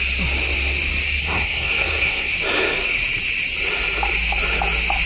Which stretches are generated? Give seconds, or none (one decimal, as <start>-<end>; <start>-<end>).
1.2-2.3